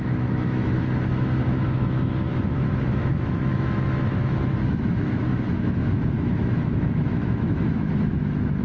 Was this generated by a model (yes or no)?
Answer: yes